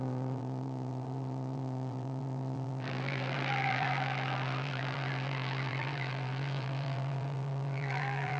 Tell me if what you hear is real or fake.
fake